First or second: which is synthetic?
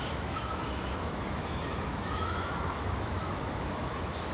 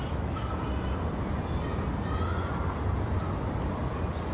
first